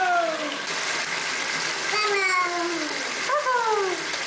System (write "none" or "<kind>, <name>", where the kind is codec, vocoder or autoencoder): none